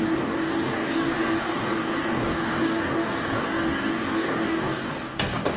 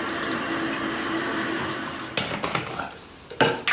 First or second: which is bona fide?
second